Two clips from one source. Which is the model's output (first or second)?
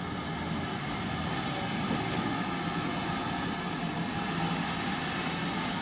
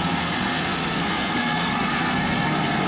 second